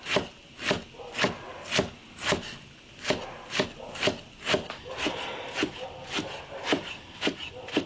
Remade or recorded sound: recorded